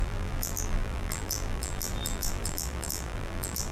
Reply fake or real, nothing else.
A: fake